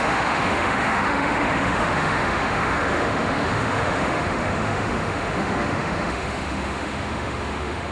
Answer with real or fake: fake